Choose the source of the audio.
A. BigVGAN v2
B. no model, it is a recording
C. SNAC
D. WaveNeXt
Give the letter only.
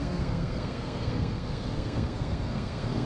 C